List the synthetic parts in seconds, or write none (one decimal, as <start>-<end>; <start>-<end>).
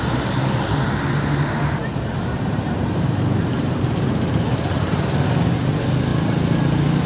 1.9-5.2